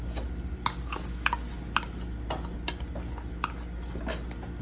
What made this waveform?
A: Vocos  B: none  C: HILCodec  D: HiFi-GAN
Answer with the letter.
B